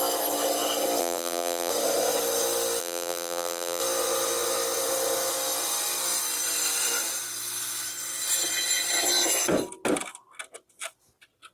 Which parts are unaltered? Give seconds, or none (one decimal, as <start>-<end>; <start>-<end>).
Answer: 0.0-1.0; 1.7-2.8; 3.8-11.5